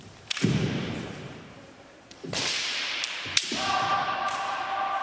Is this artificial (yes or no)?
yes